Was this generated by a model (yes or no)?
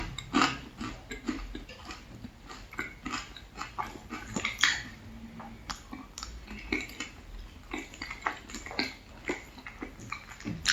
no